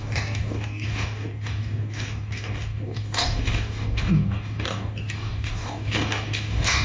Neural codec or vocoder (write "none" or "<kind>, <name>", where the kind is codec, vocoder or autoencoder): codec, DAC